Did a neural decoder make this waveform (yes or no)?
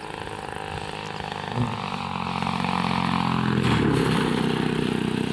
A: no